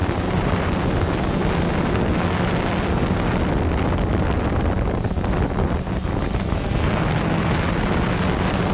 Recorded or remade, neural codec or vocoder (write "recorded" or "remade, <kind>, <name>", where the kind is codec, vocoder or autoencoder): recorded